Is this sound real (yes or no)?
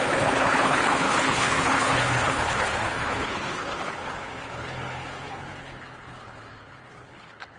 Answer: no